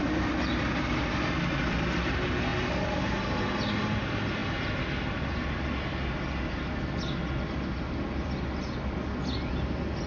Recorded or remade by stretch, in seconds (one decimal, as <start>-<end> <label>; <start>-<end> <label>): 0.0-10.1 recorded